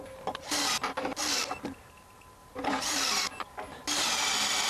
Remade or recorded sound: recorded